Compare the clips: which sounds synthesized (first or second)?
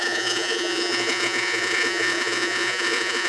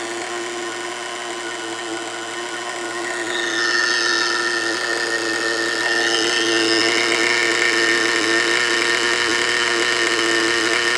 first